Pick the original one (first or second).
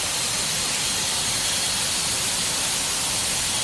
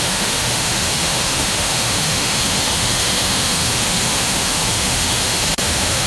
first